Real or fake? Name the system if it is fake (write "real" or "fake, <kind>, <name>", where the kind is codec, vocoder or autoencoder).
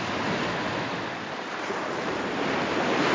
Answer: fake, vocoder, BigVGAN v2